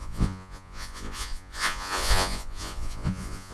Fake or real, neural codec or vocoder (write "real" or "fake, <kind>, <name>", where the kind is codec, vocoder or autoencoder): fake, vocoder, Vocos